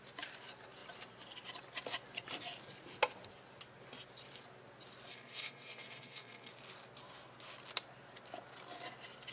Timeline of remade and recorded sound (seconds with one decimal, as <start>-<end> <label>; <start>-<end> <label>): 0.0-5.1 recorded; 5.1-6.5 remade; 6.5-9.3 recorded